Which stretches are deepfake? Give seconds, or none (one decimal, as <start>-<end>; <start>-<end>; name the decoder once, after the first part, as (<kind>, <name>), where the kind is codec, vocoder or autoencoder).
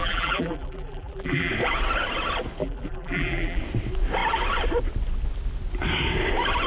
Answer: 0.0-1.5 (vocoder, BigVGAN v2); 2.6-3.6